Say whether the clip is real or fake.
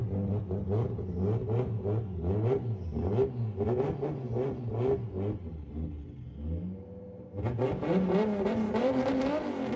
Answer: real